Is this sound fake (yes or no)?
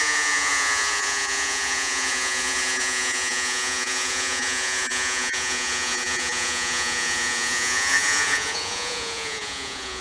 yes